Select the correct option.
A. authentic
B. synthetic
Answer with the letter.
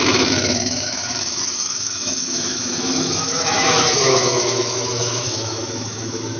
B